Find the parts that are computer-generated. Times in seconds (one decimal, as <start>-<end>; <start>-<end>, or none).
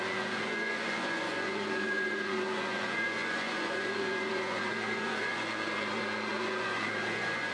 0.0-7.5